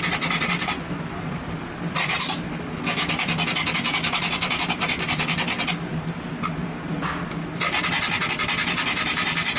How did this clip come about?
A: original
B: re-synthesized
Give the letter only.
A